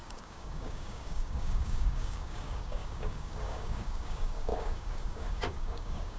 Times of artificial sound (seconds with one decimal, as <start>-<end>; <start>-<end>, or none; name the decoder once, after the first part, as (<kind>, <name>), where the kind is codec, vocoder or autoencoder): 0.0-6.2 (codec, DAC)